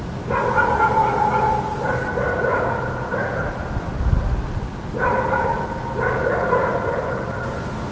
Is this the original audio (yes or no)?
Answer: yes